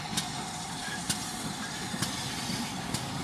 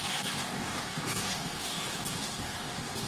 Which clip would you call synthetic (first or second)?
second